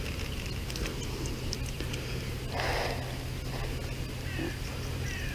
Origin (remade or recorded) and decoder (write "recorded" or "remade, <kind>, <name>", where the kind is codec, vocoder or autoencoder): recorded